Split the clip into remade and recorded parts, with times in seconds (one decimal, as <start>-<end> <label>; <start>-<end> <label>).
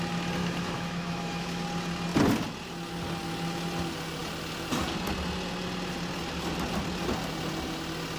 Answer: 0.0-0.4 recorded; 0.4-1.6 remade; 1.6-8.2 recorded